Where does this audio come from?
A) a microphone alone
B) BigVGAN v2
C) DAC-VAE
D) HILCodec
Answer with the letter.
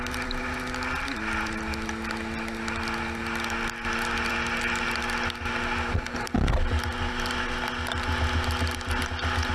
A